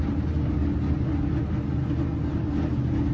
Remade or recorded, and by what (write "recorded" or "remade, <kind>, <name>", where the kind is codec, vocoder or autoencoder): recorded